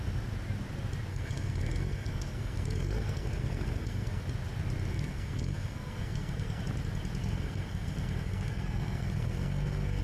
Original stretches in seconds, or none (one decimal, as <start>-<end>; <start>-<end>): 0.0-1.1; 4.2-4.9; 6.6-7.2

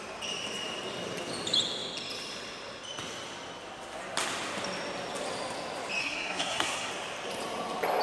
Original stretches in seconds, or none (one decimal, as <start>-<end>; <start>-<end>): 0.0-6.0; 6.9-8.0

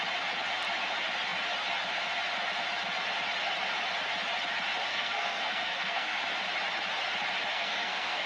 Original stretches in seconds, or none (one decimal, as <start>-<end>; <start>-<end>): 0.0-4.9; 6.2-7.5

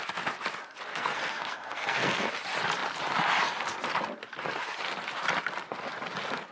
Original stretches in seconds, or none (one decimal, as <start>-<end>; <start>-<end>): 0.0-0.9; 2.3-6.5

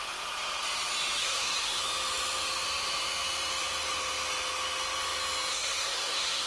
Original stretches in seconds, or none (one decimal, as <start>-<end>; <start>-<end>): 0.0-1.2; 1.8-5.5